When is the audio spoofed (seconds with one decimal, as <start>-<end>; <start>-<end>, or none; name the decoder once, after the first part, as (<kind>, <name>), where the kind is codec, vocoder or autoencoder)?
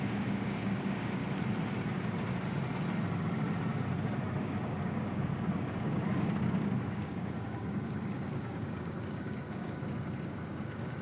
0.0-1.2 (codec, DAC); 4.4-11.0